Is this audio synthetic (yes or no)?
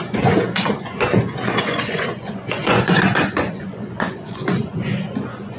yes